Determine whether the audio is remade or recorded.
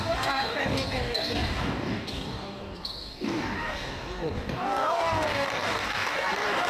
remade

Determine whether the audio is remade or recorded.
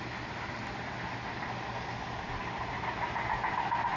recorded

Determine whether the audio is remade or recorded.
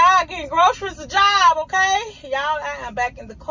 recorded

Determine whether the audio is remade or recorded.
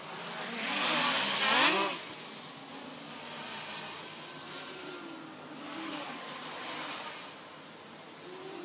recorded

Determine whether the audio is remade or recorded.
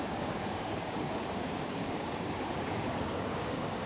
remade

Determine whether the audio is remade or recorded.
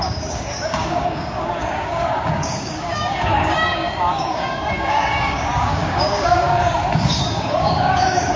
remade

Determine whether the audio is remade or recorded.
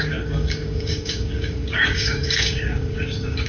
remade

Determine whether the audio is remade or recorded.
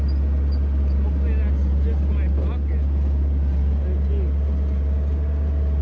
recorded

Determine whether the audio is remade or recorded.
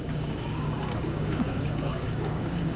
remade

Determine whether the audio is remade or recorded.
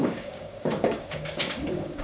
remade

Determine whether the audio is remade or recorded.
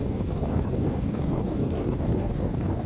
remade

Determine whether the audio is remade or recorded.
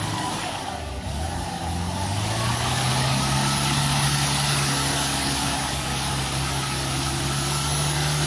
remade